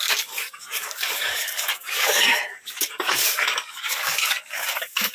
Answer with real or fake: fake